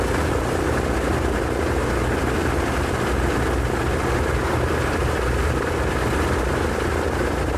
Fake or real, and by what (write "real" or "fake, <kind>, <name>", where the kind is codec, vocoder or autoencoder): real